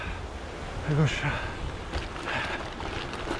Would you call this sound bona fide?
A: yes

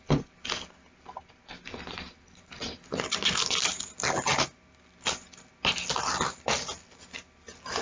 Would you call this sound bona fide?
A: yes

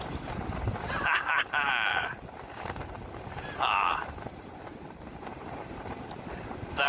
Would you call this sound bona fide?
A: no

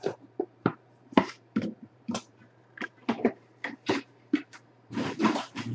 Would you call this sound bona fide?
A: no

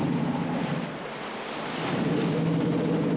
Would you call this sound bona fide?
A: yes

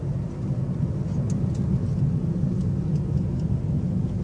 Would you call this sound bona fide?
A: yes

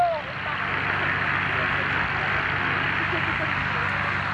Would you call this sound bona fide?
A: yes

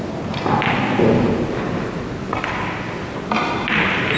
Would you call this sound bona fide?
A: yes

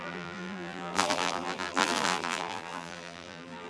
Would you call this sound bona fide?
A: no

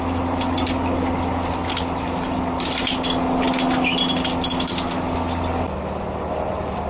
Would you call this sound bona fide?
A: yes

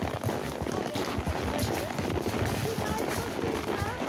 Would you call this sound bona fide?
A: yes